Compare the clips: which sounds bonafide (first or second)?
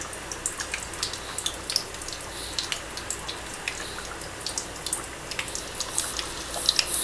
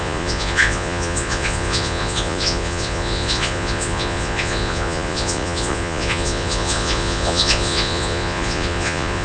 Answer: first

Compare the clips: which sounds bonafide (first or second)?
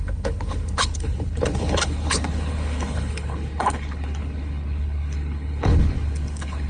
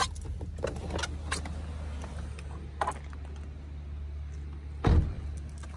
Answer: second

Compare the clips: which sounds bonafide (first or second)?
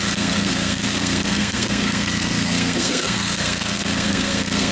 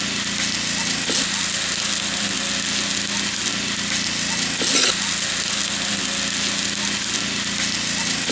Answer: second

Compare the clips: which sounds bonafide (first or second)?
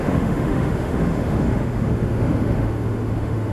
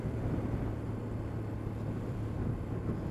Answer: second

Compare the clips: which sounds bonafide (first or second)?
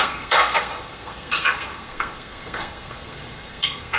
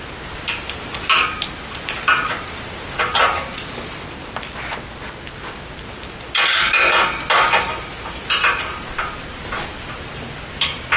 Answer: second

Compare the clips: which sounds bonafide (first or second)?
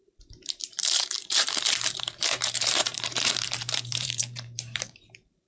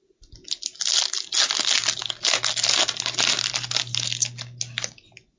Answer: second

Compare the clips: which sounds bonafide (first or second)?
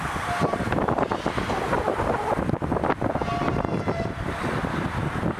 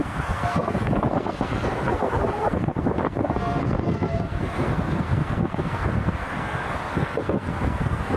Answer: first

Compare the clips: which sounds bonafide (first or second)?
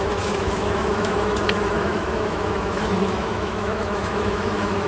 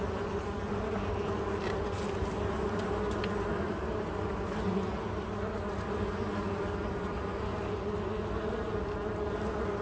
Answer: second